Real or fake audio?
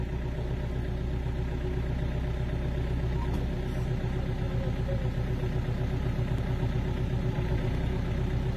real